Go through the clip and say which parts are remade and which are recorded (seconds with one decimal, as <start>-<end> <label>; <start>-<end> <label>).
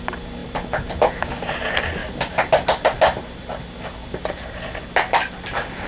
0.0-5.9 recorded